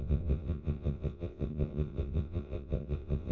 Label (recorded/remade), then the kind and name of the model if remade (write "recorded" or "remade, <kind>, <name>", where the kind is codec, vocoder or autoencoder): remade, vocoder, WaveNeXt